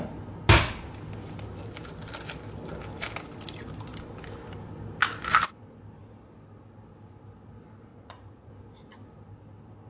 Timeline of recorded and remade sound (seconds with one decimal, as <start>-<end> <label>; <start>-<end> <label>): 0.0-7.9 recorded; 7.9-8.5 remade; 8.5-9.9 recorded